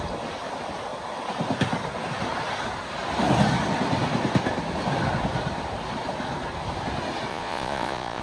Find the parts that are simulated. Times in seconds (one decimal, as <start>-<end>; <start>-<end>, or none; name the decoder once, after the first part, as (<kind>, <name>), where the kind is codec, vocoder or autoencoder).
7.3-8.2 (vocoder, Vocos)